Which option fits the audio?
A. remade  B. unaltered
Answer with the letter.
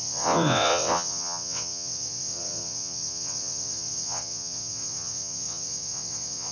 A